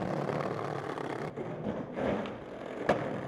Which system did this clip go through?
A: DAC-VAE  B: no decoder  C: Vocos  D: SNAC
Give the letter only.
B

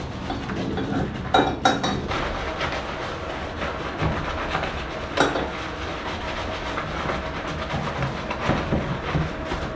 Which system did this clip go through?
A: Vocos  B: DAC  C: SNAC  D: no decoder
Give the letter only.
D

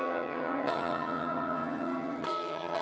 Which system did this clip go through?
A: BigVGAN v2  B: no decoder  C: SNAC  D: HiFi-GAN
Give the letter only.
D